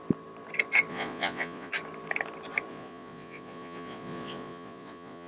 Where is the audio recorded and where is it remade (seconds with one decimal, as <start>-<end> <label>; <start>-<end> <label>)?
0.0-0.9 recorded; 0.9-1.7 remade; 1.7-2.7 recorded; 2.7-5.3 remade